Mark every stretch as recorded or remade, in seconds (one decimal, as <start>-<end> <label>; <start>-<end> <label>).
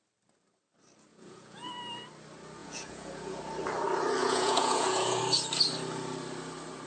0.0-1.1 recorded; 1.1-1.7 remade; 1.7-2.6 recorded; 2.6-3.4 remade; 3.4-4.2 recorded; 4.2-5.2 remade; 5.2-6.9 recorded